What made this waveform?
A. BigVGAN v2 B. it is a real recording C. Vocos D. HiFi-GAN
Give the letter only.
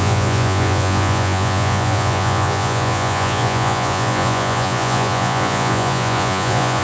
C